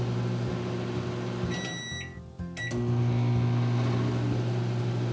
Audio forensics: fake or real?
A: real